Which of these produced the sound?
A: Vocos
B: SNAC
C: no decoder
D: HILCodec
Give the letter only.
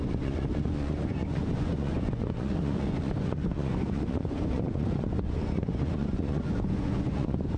A